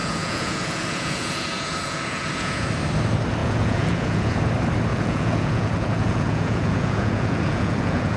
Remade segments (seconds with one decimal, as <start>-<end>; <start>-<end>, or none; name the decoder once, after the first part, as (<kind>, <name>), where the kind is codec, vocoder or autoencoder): 0.0-2.7 (vocoder, Vocos); 3.4-4.4; 4.9-8.2